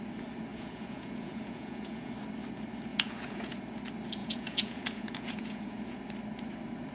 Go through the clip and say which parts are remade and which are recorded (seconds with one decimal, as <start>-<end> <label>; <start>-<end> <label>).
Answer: 0.0-0.5 recorded; 0.5-2.1 remade; 2.1-2.9 recorded; 2.9-3.6 remade; 3.6-4.2 recorded; 4.2-6.0 remade; 6.0-6.9 recorded